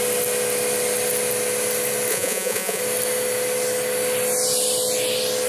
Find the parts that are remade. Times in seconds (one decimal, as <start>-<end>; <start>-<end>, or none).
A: 2.1-2.8